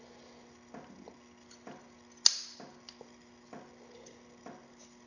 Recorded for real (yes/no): yes